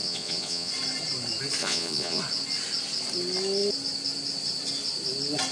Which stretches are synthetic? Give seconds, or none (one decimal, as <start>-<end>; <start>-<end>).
0.0-0.7; 1.6-2.2